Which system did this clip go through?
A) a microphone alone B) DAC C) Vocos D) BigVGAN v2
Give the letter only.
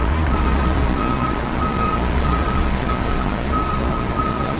C